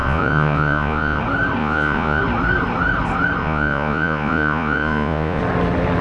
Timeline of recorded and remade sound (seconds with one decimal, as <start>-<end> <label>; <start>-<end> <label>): 0.0-1.2 remade; 1.2-1.6 recorded; 1.6-2.2 remade; 2.2-3.4 recorded; 3.4-5.4 remade; 5.4-6.0 recorded